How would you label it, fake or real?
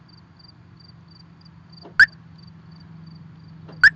real